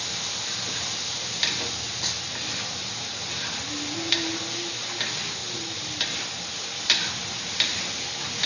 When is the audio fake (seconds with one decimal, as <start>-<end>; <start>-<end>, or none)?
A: none